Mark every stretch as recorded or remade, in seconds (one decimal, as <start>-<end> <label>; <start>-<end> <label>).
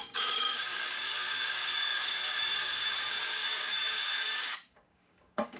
0.0-5.6 remade